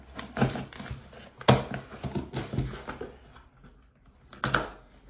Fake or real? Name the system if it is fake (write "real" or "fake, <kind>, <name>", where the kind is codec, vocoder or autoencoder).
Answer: real